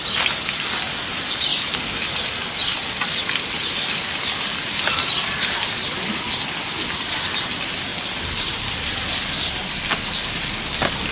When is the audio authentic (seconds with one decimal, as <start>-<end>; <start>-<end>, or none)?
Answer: 0.0-11.1